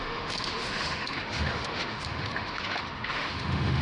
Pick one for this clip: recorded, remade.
remade